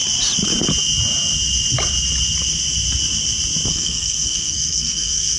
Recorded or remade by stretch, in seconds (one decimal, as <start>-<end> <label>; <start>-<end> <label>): 0.0-3.7 recorded; 3.7-5.4 remade